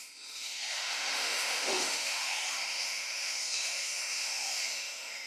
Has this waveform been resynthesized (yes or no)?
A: yes